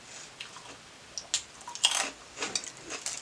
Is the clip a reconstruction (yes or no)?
no